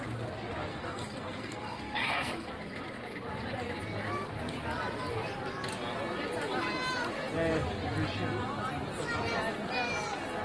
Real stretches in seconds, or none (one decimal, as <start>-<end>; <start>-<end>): 0.0-0.7; 2.5-10.4